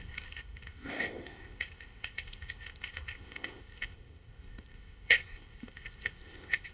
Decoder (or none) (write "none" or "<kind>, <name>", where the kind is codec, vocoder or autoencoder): codec, ZipCodec